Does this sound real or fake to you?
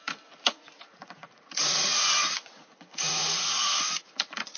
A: fake